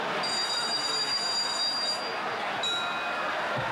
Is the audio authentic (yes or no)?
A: yes